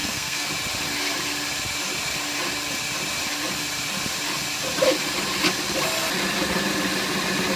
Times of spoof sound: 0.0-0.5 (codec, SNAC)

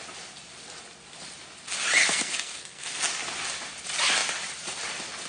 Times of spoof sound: 2.0-3.0 (codec, SNAC)

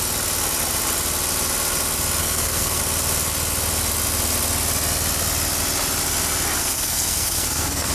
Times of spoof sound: 2.2-2.8 (codec, SNAC); 6.6-7.9

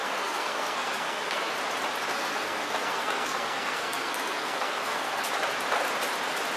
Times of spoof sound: 0.0-1.5 (codec, SNAC); 2.1-5.3

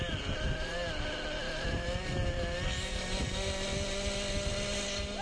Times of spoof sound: none

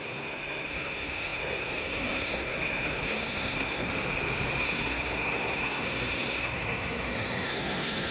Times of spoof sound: 0.0-3.9 (codec, SNAC); 4.6-8.1

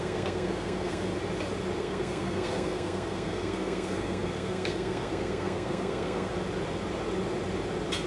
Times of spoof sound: 0.0-1.1 (codec, SNAC); 1.8-6.3